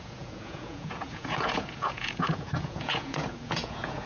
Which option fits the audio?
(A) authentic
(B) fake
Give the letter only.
B